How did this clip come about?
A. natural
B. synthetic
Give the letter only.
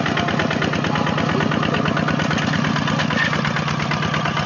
A